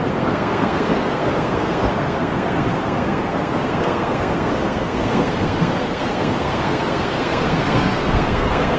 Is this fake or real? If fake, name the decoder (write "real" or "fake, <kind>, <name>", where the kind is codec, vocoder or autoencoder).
fake, codec, SNAC